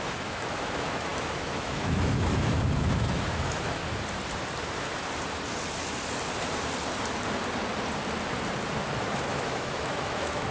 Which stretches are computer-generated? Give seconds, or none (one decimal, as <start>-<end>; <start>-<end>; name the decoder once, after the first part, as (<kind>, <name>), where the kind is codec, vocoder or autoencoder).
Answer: 0.0-3.8 (autoencoder, DAC-VAE); 9.0-10.5